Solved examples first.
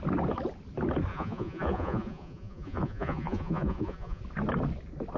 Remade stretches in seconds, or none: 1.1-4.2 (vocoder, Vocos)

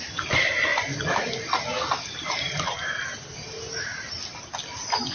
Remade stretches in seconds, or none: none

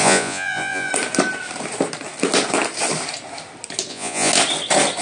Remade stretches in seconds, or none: 0.0-0.9 (vocoder, Vocos); 3.9-4.3